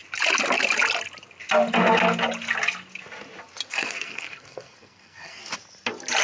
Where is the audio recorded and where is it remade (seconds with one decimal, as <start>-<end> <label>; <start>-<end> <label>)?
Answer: 0.0-3.7 recorded; 3.7-5.4 remade; 5.4-6.2 recorded